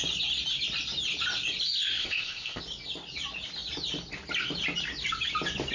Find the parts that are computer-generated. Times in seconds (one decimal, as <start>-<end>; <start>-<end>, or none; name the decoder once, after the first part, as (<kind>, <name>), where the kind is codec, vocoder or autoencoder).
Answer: 2.0-2.6 (codec, ZipCodec)